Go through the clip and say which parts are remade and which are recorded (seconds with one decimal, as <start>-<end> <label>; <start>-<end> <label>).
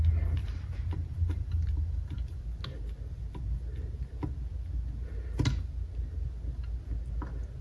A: 0.0-0.4 recorded; 0.4-2.4 remade; 2.4-7.6 recorded